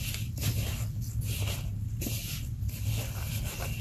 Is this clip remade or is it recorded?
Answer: recorded